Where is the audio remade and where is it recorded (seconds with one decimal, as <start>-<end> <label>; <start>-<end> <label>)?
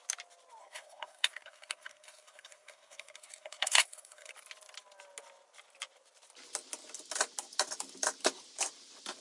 0.0-0.6 recorded; 0.6-4.3 remade; 4.3-9.2 recorded